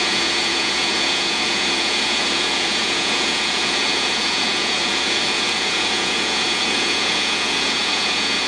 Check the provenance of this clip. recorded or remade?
remade